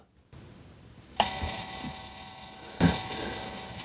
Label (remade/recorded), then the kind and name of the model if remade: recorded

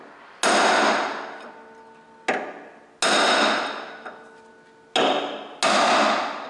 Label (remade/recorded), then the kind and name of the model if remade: recorded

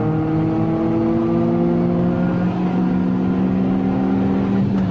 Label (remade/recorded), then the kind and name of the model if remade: recorded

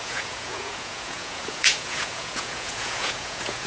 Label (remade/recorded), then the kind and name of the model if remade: remade, vocoder, Vocos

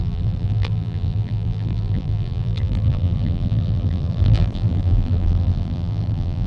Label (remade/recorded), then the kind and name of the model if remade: remade, vocoder, BigVGAN v2